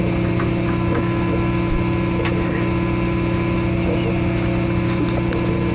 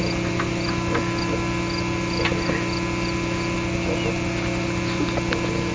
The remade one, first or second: first